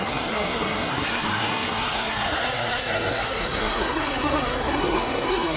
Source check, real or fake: fake